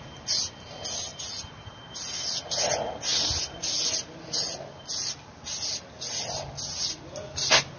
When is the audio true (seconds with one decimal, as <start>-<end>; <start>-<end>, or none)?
0.0-7.8

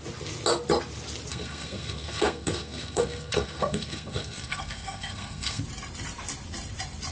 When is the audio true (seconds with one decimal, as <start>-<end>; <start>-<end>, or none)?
0.0-1.3; 5.6-7.1

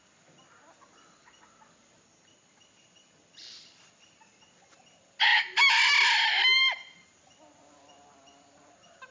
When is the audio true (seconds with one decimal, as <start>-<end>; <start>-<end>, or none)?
0.0-9.1